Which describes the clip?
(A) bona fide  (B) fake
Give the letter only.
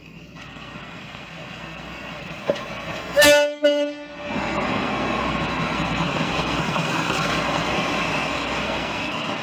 B